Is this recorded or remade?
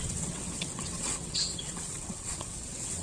remade